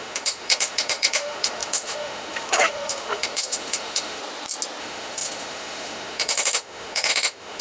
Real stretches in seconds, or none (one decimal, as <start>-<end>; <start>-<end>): 4.2-4.8